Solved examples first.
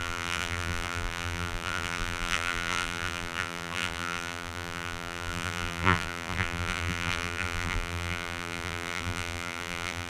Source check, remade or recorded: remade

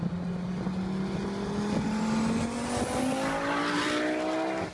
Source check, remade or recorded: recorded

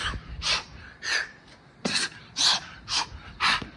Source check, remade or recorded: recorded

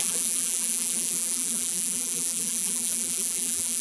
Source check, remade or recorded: remade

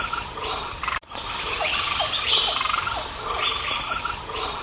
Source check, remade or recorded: recorded